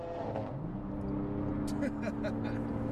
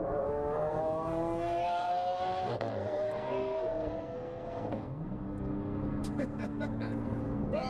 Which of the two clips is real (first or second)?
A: first